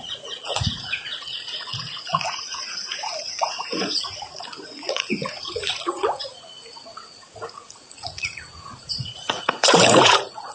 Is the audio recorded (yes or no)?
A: no